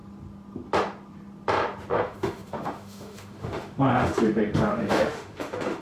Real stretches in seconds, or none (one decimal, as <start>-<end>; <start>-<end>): 0.0-1.9